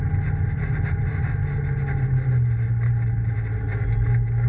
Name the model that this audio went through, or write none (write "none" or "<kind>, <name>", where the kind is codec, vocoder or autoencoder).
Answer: none